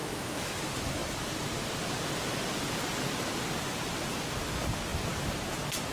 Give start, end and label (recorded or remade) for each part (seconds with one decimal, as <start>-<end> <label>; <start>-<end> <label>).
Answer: 0.0-0.6 remade; 0.6-5.9 recorded